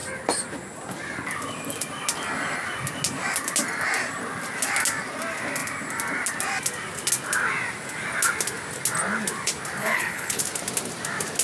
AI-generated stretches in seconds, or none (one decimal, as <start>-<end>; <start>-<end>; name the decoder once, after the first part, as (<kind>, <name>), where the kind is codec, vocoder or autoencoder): 9.8-10.4 (codec, HILCodec)